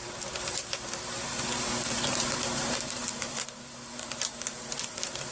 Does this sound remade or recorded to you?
remade